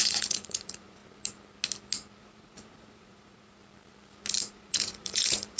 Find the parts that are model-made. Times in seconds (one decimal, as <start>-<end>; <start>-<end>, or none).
0.0-1.0; 2.2-3.6; 4.4-5.6

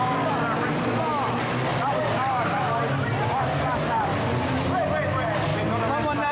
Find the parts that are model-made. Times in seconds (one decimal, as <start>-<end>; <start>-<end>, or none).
none

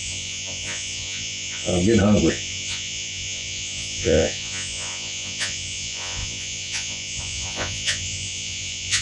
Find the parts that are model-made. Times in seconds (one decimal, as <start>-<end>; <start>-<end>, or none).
0.0-1.7; 2.3-9.0

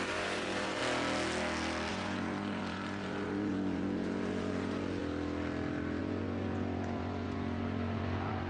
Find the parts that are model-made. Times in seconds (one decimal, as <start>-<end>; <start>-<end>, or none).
0.0-0.8; 1.9-5.0; 6.0-8.5

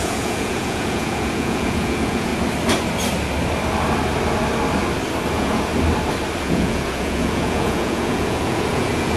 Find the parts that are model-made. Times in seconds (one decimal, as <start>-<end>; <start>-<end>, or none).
0.0-2.3; 5.3-5.7; 6.4-9.2